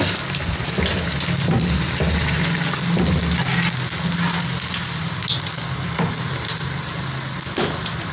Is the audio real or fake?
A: real